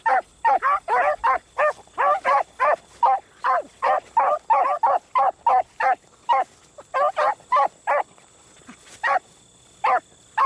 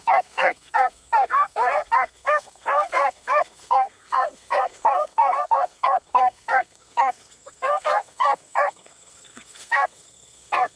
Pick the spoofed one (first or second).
second